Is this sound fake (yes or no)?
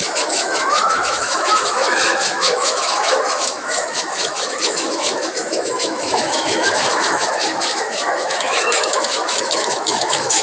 yes